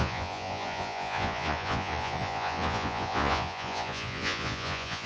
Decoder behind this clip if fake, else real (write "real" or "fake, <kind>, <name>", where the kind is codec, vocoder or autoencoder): fake, vocoder, Vocos